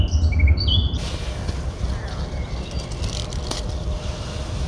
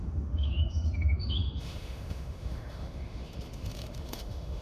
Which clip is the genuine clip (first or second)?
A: first